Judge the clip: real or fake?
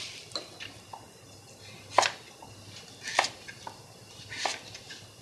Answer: real